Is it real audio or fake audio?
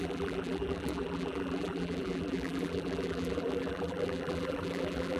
fake